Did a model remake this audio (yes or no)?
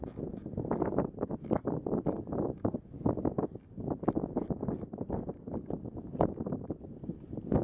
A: no